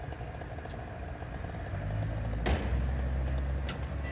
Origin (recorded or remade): recorded